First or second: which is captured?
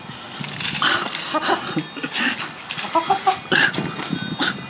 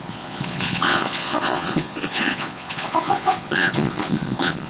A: first